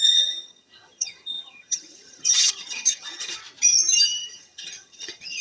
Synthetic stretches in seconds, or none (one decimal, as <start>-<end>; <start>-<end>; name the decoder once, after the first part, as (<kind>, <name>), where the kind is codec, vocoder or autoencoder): 0.0-3.4 (vocoder, HiFi-GAN); 4.3-5.4